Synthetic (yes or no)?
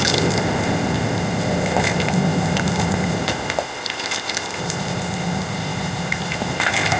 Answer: yes